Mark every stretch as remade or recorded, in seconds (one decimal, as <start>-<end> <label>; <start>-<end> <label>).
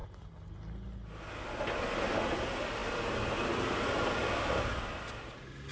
0.0-5.7 recorded